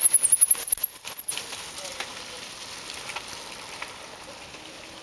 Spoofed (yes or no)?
no